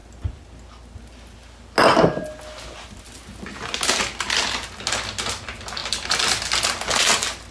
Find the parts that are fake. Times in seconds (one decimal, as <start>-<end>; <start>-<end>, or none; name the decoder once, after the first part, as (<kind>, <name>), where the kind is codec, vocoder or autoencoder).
none